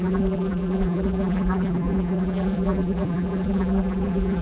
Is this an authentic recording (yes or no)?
no